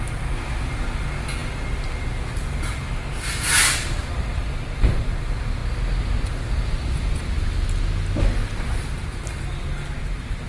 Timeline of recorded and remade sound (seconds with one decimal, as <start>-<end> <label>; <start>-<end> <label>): 0.0-10.5 recorded